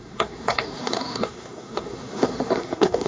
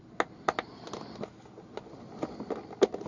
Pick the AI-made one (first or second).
first